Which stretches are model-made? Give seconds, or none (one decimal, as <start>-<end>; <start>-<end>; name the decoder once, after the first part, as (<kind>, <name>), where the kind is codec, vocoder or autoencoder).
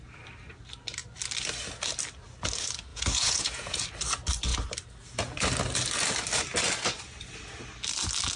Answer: 2.9-3.8 (vocoder, Vocos)